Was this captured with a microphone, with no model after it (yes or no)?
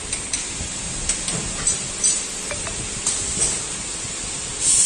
yes